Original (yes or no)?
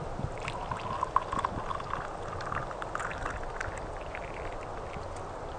yes